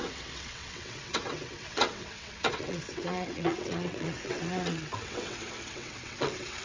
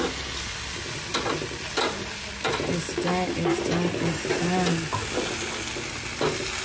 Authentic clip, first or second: second